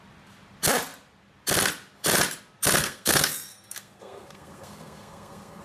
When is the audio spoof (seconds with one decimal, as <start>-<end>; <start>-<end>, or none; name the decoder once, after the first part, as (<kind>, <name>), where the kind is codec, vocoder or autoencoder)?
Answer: 2.8-5.6 (codec, SNAC)